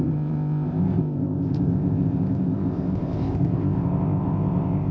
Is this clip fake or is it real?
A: fake